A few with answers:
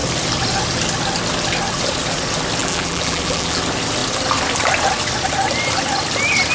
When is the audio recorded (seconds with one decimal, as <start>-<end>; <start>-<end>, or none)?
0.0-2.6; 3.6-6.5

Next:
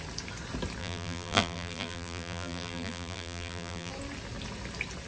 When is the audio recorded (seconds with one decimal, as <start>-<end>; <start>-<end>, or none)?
0.0-0.8; 3.9-5.1

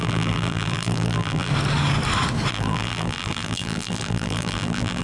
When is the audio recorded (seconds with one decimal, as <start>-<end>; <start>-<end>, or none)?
1.5-2.5

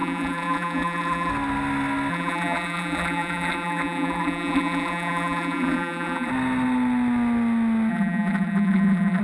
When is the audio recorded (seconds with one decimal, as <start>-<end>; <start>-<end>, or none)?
1.3-2.1; 6.3-7.9